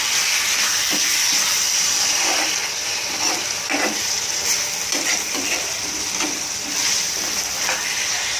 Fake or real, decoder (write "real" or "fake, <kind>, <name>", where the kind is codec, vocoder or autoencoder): fake, vocoder, BigVGAN v2